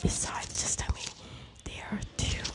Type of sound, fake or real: real